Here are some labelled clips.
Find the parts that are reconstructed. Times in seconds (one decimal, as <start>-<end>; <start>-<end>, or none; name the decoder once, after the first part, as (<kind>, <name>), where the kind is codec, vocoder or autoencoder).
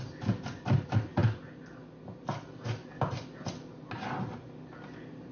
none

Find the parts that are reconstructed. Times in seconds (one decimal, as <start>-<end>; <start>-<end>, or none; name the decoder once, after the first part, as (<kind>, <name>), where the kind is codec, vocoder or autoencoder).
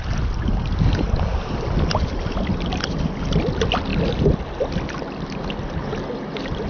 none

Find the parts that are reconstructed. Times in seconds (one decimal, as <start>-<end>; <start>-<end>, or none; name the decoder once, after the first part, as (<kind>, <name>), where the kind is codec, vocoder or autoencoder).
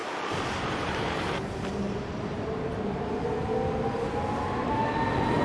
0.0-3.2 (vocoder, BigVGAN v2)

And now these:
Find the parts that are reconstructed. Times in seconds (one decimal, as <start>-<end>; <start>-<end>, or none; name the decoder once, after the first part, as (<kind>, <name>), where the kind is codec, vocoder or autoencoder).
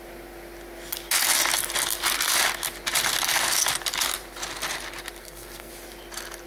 5.2-5.7 (codec, SNAC)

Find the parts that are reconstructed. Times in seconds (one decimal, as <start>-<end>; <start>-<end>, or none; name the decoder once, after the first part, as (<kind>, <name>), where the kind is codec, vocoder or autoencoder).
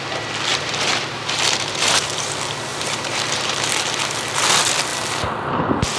0.5-2.3 (vocoder, BigVGAN v2); 2.7-3.7